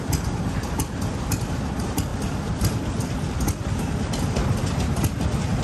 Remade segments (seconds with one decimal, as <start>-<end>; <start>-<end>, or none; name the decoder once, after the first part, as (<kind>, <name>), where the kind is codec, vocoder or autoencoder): none